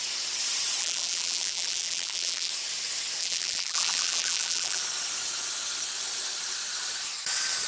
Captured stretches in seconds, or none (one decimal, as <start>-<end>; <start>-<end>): 0.0-0.8; 2.5-3.2; 4.8-7.7